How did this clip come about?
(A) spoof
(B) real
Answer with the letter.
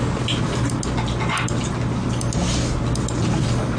B